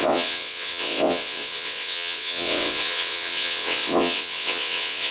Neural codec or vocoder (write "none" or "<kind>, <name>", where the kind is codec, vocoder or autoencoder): vocoder, WaveNeXt